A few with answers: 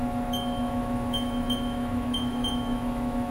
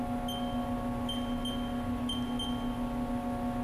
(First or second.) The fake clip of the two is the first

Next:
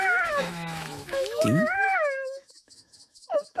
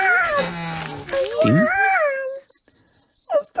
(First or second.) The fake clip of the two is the first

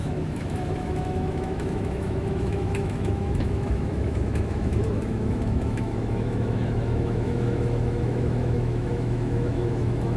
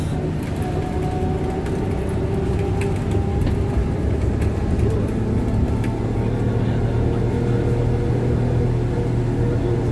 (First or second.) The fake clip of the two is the first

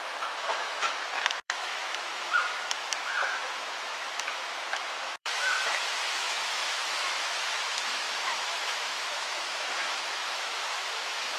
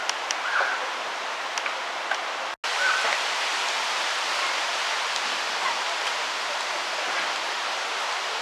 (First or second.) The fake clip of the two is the first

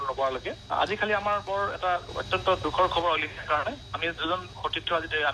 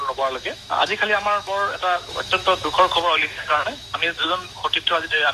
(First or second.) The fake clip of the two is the second